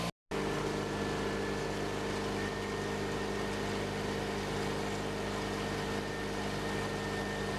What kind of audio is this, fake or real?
real